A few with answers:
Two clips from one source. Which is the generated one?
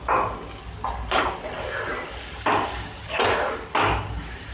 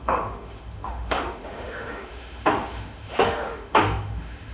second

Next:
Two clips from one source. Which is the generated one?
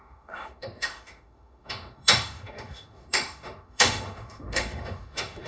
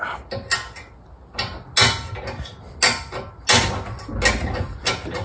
first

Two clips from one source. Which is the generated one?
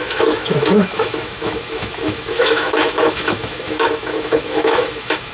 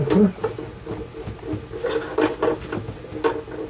first